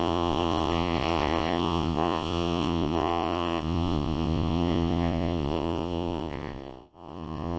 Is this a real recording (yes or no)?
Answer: no